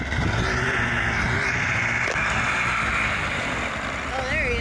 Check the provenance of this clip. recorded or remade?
recorded